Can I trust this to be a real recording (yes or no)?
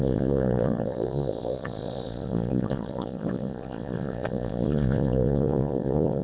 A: no